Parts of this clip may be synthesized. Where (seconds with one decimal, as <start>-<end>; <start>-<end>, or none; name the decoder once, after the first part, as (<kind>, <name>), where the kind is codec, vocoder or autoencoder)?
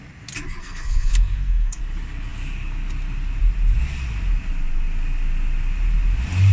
0.6-1.8 (codec, SNAC)